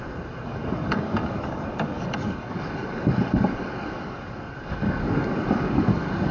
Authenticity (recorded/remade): remade